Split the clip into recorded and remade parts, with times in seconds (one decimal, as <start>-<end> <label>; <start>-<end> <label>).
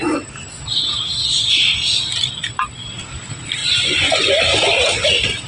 0.0-3.6 recorded; 3.6-4.2 remade; 4.2-5.5 recorded